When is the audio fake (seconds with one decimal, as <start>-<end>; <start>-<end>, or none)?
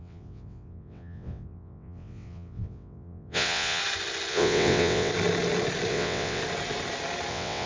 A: 0.0-3.8; 4.3-5.1; 5.9-6.4; 7.3-7.7